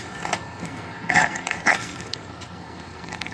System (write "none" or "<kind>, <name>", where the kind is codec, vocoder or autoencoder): codec, SNAC